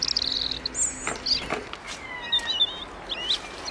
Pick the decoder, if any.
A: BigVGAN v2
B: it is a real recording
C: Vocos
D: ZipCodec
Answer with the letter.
B